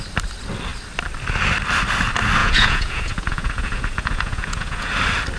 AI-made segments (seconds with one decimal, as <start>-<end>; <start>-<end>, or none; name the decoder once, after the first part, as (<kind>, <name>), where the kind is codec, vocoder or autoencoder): 2.4-4.9 (vocoder, Vocos)